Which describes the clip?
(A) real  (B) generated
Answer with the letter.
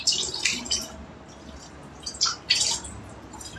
A